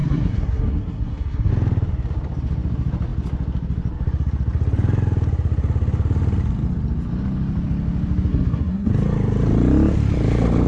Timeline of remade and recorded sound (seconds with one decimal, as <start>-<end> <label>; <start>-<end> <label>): 0.0-1.5 remade; 1.5-8.3 recorded; 8.3-8.9 remade; 8.9-10.7 recorded